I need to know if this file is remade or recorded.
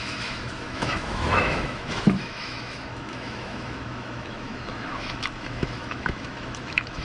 remade